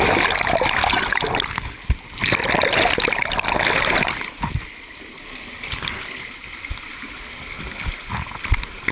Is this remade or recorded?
recorded